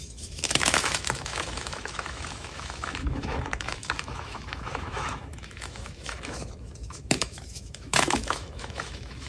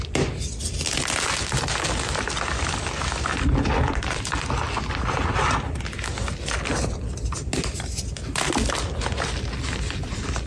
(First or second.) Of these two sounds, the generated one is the first